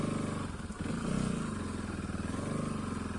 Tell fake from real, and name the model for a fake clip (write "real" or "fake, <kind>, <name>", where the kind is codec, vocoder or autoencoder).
real